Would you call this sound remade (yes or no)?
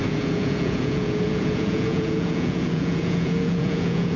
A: yes